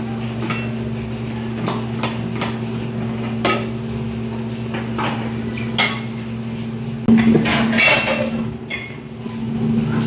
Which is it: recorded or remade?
recorded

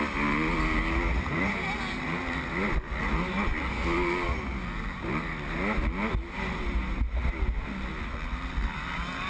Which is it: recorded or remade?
recorded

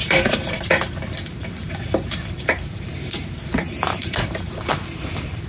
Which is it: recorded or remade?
remade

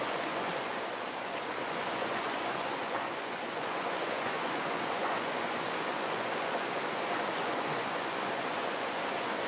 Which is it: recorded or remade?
remade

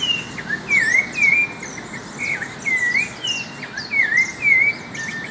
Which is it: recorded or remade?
recorded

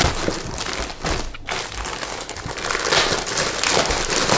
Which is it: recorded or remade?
recorded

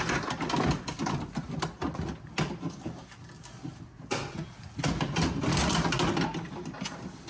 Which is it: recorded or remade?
recorded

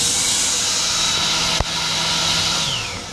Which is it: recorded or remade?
recorded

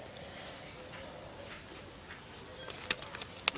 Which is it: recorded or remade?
recorded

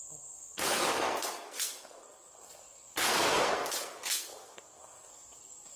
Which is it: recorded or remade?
remade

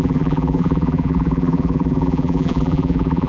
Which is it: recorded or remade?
remade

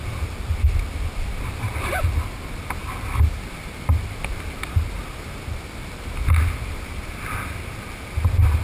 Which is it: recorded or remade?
recorded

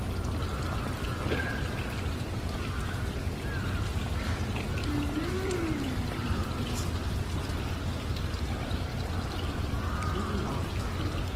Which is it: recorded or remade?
recorded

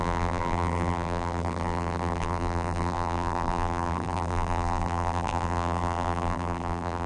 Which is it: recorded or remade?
remade